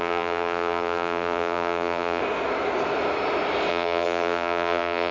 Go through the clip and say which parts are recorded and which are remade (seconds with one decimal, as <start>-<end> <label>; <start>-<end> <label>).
0.0-2.2 remade; 2.2-3.7 recorded; 3.7-5.1 remade